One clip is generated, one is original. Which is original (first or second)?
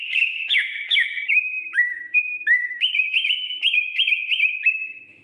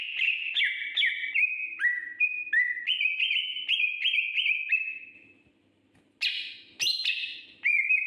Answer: second